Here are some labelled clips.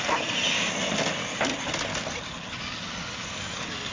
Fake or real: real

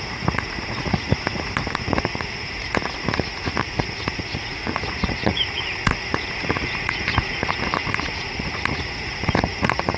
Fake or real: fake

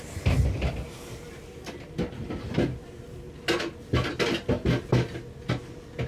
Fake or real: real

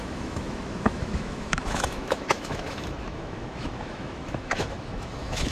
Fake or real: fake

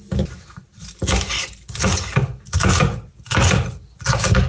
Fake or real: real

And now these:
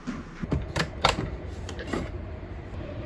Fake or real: fake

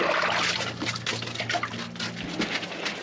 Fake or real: real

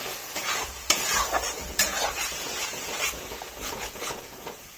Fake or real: fake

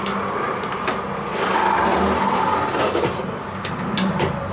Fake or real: real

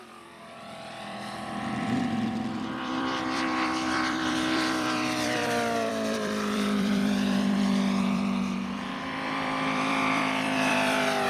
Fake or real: fake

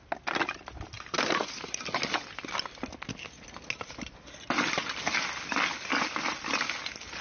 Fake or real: real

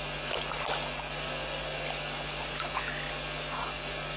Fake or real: real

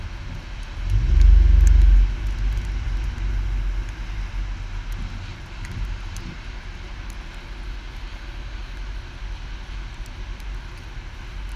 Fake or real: real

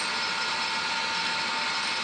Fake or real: real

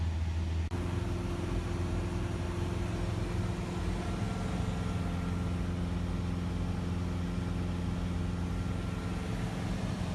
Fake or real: real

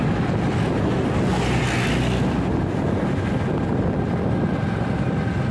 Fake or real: real